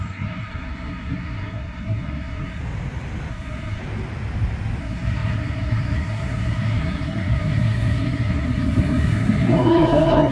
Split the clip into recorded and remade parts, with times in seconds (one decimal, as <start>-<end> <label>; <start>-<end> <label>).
0.0-2.6 remade; 2.6-3.3 recorded; 3.3-3.8 remade; 3.8-4.8 recorded; 4.8-10.3 remade